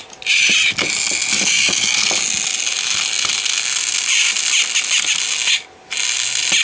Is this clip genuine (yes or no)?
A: yes